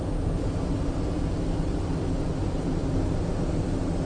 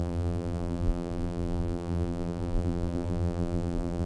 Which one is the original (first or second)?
first